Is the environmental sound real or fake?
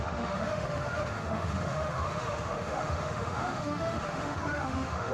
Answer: fake